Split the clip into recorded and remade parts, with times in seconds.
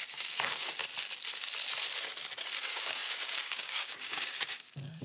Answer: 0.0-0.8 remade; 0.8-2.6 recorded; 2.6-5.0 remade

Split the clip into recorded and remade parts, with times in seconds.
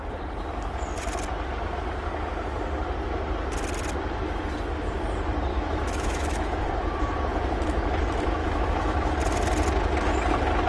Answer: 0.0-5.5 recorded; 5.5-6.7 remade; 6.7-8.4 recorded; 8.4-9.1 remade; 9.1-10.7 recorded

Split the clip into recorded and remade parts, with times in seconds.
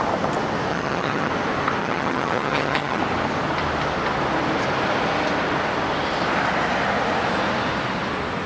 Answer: 0.0-0.7 recorded; 0.7-1.3 remade; 1.3-1.8 recorded; 1.8-3.0 remade; 3.0-8.5 recorded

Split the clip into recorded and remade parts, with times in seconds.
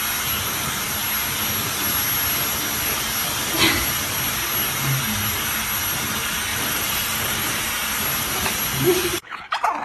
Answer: 0.0-6.5 recorded; 6.5-7.6 remade; 7.6-9.8 recorded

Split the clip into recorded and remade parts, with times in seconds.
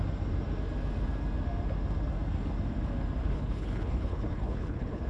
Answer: 0.0-3.2 recorded; 3.2-5.1 remade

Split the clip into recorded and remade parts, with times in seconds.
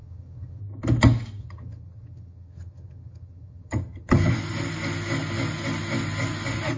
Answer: 0.0-0.6 remade; 0.6-1.4 recorded; 1.4-4.3 remade; 4.3-6.8 recorded